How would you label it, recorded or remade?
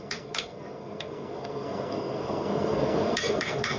remade